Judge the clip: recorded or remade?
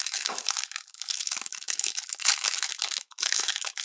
remade